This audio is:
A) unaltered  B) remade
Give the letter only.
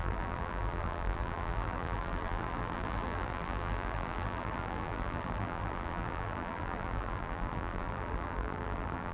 B